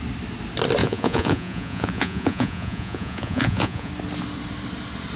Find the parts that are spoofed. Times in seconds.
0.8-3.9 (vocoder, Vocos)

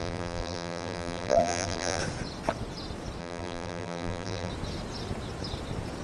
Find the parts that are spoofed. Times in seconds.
0.0-2.0 (vocoder, BigVGAN v2); 3.2-4.5

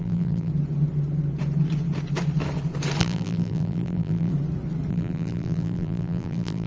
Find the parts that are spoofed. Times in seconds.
0.0-0.5 (vocoder, BigVGAN v2); 3.0-4.3; 4.9-6.7

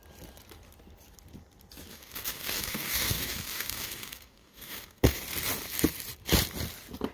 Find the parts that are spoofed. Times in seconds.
1.9-5.2 (codec, DAC)

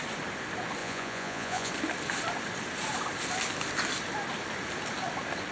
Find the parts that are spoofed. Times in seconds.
0.8-1.7 (vocoder, Vocos)

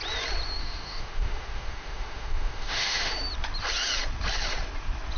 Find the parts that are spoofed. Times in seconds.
0.6-3.1 (autoencoder, DAC-VAE)

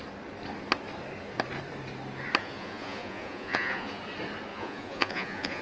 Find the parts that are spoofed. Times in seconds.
2.4-4.0 (vocoder, Vocos); 4.5-5.6